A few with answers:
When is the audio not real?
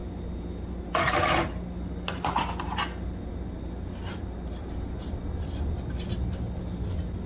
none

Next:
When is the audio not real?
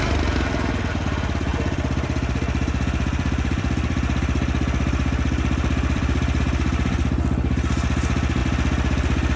1.5-6.4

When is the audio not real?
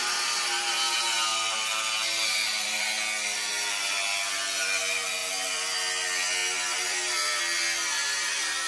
1.3-3.5; 5.2-5.8; 6.4-7.4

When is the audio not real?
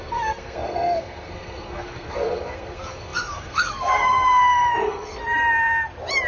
0.0-5.2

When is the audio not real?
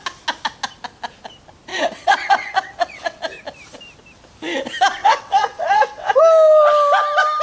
1.7-3.2; 5.0-6.2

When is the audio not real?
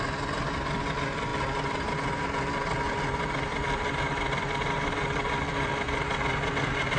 none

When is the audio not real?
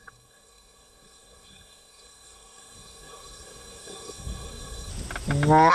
0.0-4.9